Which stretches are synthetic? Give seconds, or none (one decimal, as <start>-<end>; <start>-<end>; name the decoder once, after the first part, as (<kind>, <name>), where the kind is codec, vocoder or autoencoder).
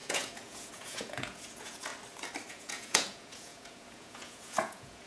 0.0-1.9 (vocoder, Vocos); 2.5-5.1